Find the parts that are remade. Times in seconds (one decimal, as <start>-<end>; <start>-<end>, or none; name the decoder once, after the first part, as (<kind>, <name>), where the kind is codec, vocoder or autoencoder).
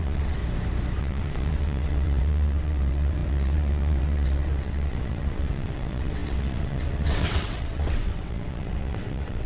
0.0-0.4 (vocoder, WaveNeXt); 1.0-9.5